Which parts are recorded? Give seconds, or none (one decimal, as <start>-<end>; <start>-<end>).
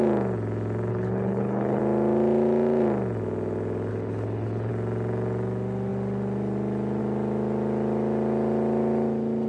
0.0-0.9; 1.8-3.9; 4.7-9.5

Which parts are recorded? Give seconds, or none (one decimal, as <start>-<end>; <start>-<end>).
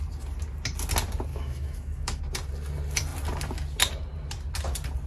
0.0-1.3; 2.2-5.1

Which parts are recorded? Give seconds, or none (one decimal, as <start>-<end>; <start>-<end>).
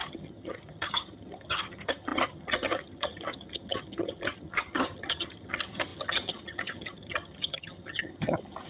none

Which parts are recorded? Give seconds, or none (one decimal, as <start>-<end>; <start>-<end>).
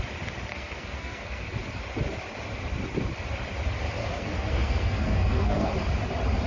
0.0-0.5; 1.5-4.0; 5.7-6.5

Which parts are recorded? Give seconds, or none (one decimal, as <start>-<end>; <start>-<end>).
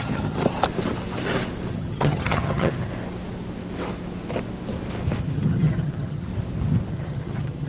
0.4-1.7; 2.9-5.2; 6.3-6.9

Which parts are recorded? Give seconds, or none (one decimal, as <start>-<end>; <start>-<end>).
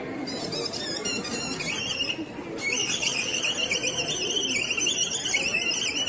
0.0-2.8; 3.4-6.1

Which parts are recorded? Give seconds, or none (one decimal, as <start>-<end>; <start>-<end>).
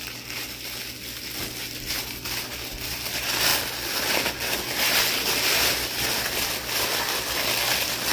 0.0-8.1